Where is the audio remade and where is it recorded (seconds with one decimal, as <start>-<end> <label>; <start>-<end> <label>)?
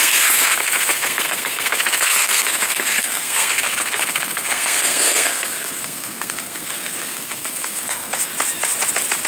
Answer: 0.0-8.3 remade; 8.3-9.3 recorded